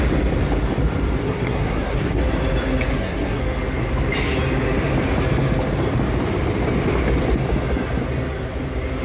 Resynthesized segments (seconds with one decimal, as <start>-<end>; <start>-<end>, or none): 1.2-2.2; 2.9-3.4